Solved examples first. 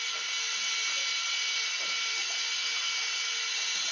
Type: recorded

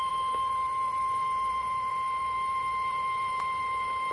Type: remade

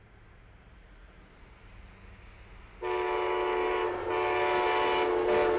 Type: recorded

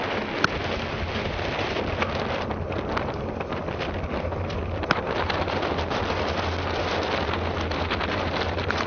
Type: recorded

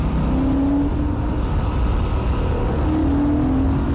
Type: recorded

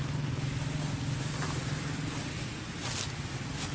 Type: recorded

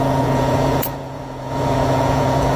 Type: remade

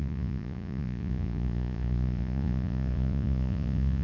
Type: remade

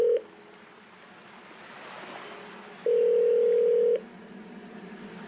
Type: recorded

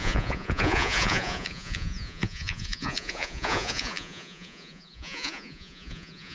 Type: remade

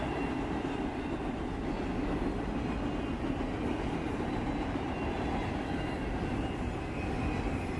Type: recorded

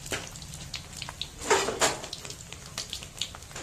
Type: recorded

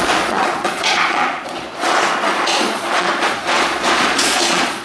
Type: remade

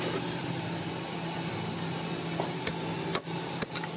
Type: recorded